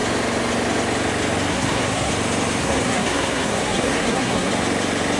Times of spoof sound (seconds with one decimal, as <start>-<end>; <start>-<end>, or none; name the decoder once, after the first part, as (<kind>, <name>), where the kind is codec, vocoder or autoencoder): 1.5-2.1 (codec, SNAC); 2.6-4.5